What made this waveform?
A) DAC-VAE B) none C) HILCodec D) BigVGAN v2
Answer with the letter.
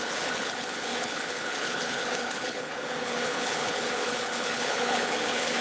C